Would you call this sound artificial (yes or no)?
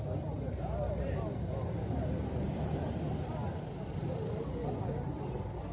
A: no